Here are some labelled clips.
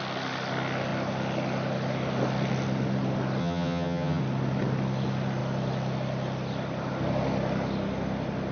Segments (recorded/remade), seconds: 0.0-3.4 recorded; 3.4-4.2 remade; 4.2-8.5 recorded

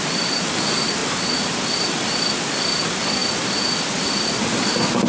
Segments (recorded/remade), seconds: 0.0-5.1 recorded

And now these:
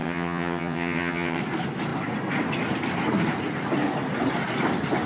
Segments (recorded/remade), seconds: 0.0-1.4 remade; 1.4-5.1 recorded

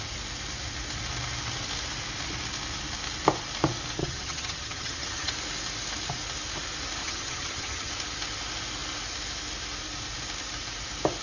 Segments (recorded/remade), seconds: 0.0-4.0 recorded; 4.0-5.3 remade; 5.3-7.0 recorded; 7.0-7.9 remade; 7.9-11.2 recorded